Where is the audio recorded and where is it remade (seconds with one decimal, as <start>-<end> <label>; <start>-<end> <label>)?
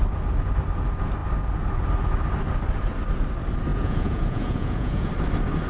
0.0-3.7 recorded; 3.7-5.1 remade; 5.1-5.7 recorded